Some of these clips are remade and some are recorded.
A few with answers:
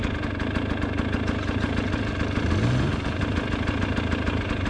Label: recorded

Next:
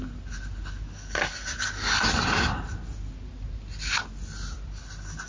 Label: recorded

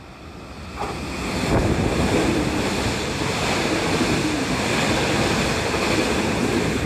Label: recorded